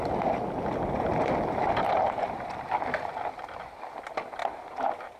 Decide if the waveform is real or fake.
real